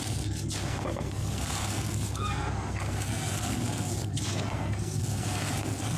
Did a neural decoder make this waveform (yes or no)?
yes